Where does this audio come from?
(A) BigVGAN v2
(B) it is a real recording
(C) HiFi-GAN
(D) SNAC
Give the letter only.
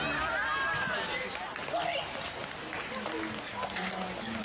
B